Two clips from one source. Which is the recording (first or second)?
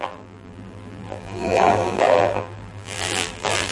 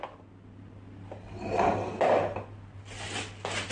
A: second